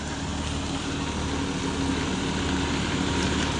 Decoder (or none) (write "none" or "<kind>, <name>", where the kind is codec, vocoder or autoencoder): none